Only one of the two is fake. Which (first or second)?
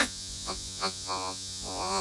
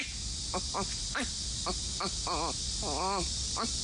first